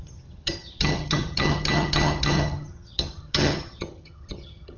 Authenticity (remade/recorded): remade